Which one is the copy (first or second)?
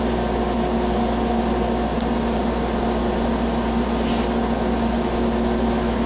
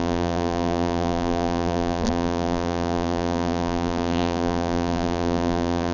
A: second